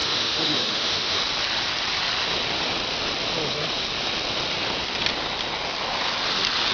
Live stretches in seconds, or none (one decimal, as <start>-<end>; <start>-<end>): 1.2-6.7